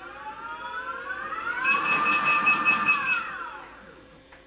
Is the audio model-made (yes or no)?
yes